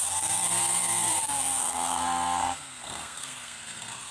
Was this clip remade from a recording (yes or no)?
yes